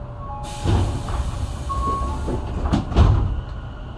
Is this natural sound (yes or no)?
yes